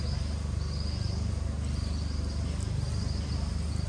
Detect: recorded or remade recorded